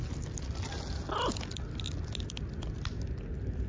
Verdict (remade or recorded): recorded